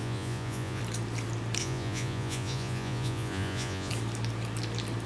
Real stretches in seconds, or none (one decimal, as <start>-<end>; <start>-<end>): 0.8-1.6; 3.9-5.1